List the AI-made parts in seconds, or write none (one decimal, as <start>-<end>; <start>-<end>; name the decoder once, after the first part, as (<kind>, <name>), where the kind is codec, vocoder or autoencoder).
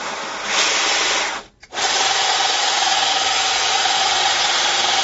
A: 2.6-4.0 (autoencoder, DAC-VAE)